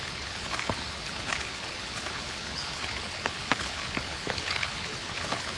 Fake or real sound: fake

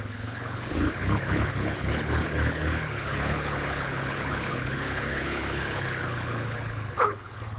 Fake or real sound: fake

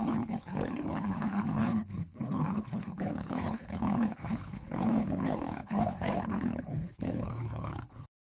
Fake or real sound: fake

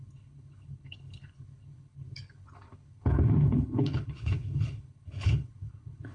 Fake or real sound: fake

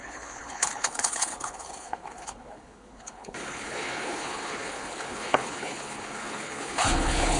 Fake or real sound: fake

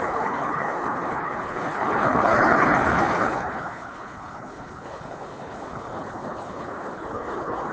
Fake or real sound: fake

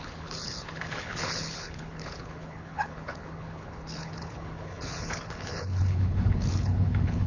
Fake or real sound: fake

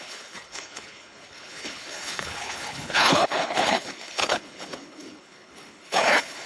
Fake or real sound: fake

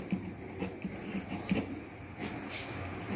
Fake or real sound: real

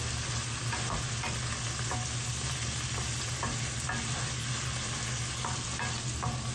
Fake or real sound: real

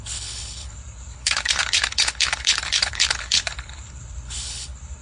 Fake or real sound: fake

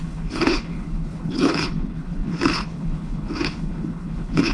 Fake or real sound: fake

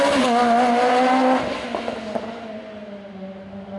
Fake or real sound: real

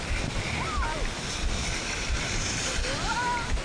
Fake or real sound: real